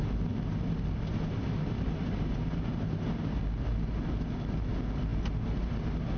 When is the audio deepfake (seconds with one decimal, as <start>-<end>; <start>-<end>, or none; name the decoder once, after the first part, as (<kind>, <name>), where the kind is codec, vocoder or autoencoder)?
1.1-3.4 (vocoder, BigVGAN v2)